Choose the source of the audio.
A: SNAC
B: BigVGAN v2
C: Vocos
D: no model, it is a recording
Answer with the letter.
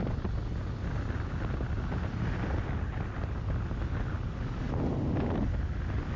D